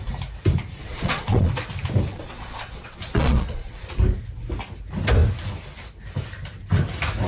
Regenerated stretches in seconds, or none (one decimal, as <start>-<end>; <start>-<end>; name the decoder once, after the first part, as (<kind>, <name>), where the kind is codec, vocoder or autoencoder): 0.8-1.5 (vocoder, Vocos); 2.1-4.0